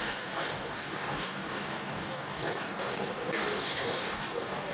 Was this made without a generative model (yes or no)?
no